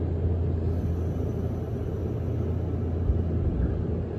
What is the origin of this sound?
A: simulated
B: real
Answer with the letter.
B